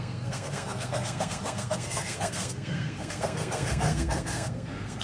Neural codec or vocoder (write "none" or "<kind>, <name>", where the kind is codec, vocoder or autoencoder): codec, SNAC